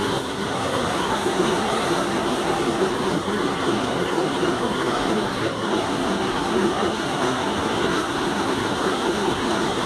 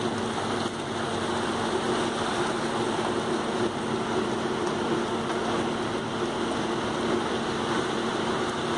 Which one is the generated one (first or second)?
first